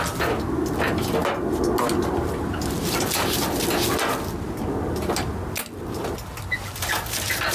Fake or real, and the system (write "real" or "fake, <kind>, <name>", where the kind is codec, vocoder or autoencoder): real